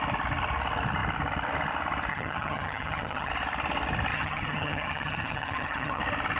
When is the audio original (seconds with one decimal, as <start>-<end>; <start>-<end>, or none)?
0.0-2.1; 3.3-4.1; 6.0-6.4